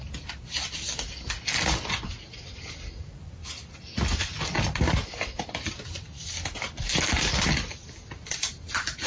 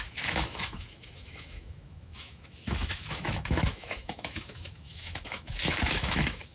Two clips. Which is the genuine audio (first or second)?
first